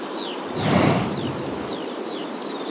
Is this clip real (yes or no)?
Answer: yes